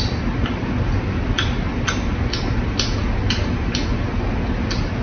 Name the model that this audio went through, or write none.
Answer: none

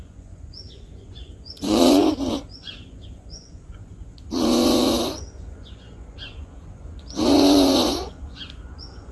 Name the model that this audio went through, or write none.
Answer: vocoder, Vocos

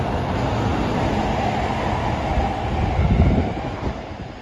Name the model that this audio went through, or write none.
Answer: none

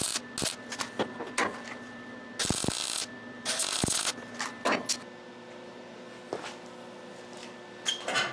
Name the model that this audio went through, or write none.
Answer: none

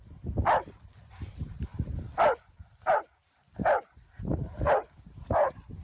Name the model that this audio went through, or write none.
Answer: none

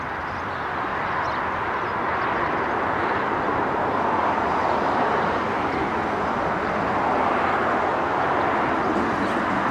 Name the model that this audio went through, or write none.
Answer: none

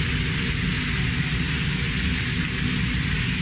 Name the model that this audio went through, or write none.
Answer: none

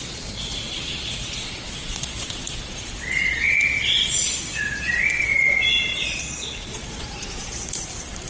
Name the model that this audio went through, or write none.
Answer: vocoder, Vocos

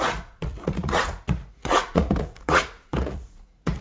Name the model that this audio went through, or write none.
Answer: vocoder, Vocos